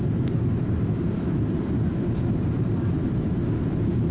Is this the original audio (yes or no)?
yes